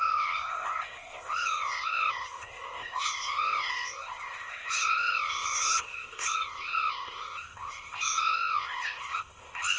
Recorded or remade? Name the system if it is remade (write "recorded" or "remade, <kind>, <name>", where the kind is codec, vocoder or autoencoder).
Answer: remade, codec, ZipCodec